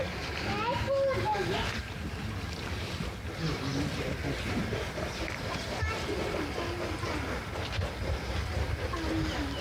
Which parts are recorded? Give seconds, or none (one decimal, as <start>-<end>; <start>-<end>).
none

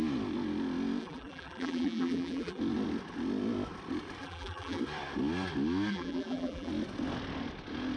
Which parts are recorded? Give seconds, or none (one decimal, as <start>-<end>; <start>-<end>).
0.0-1.0; 2.6-4.2; 4.8-5.9; 6.7-8.0

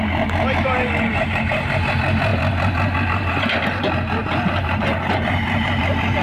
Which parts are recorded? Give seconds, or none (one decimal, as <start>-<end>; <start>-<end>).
2.3-3.0

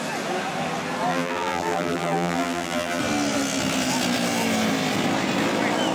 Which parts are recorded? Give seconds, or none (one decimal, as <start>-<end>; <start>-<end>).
0.0-1.1; 3.0-5.9

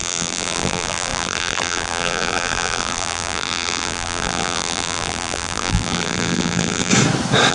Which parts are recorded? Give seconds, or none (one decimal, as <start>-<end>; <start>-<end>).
6.9-7.5

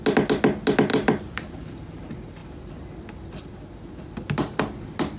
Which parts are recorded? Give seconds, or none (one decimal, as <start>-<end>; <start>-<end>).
0.0-0.9; 1.5-5.2

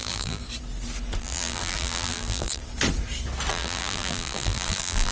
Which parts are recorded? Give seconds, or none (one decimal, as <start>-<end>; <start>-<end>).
0.4-1.2; 2.6-3.5